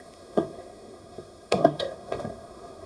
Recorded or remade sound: remade